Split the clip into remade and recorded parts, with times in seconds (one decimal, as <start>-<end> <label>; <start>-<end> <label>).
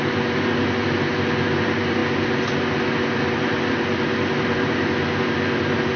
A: 0.0-6.0 recorded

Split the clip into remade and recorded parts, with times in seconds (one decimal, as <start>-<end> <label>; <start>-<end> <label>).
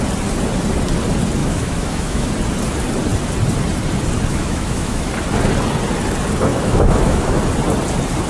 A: 0.0-1.4 recorded; 1.4-2.3 remade; 2.3-4.3 recorded; 4.3-5.1 remade; 5.1-6.5 recorded; 6.5-7.4 remade; 7.4-8.3 recorded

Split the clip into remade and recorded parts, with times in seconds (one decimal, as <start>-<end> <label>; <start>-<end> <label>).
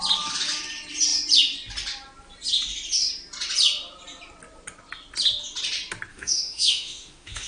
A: 0.0-6.1 recorded; 6.1-7.5 remade